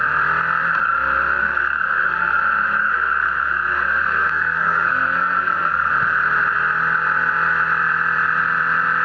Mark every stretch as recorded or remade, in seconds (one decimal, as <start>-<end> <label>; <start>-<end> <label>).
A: 0.0-1.4 recorded; 1.4-2.4 remade; 2.4-2.8 recorded; 2.8-5.9 remade; 5.9-9.0 recorded